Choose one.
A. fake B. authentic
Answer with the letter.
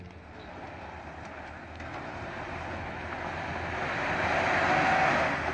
B